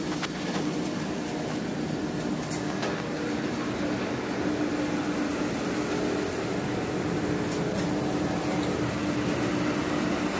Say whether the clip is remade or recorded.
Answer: recorded